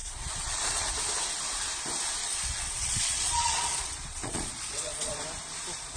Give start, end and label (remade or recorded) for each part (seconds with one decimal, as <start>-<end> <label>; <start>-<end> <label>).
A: 0.0-0.9 remade; 0.9-2.2 recorded; 2.2-5.2 remade; 5.2-6.0 recorded